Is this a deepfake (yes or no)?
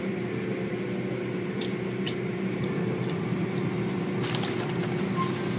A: no